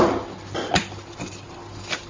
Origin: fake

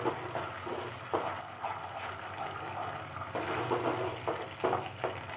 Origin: real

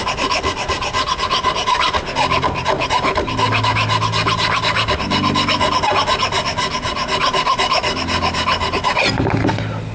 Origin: real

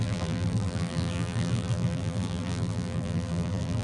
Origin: fake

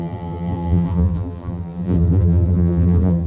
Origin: fake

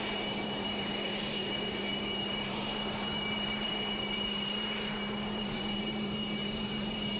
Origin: fake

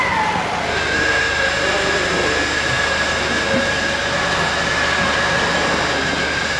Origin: real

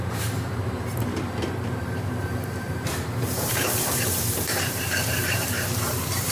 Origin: fake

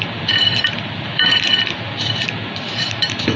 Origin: fake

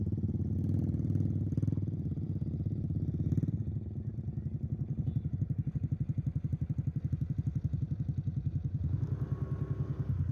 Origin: real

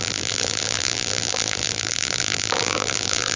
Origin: fake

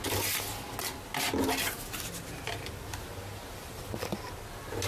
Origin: real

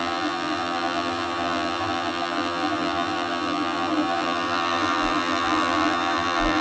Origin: fake